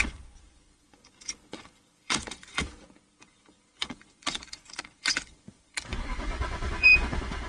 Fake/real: fake